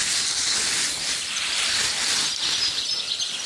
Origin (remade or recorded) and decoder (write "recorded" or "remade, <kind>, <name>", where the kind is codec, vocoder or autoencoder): recorded